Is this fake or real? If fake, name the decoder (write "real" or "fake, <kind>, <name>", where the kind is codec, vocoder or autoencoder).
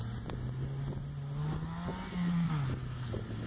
real